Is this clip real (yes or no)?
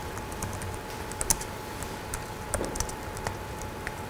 yes